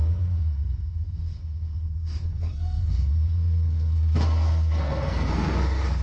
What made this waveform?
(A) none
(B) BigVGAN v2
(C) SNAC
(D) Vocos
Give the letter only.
C